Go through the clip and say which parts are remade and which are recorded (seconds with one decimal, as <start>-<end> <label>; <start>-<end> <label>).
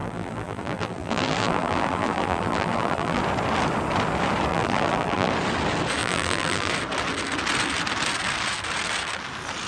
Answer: 0.0-3.2 remade; 3.2-4.5 recorded; 4.5-5.3 remade; 5.3-6.0 recorded; 6.0-6.7 remade; 6.7-9.7 recorded